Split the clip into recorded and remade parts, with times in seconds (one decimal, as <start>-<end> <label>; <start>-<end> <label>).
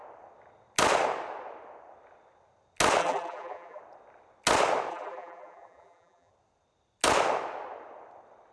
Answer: 0.0-3.0 recorded; 3.0-3.8 remade; 3.8-4.9 recorded; 4.9-6.3 remade; 6.3-8.5 recorded